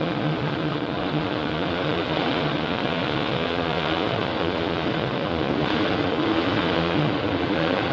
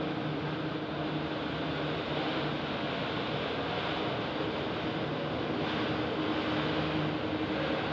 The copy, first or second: first